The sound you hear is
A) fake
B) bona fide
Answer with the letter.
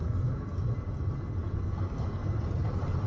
B